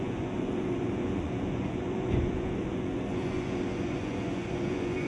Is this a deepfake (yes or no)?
yes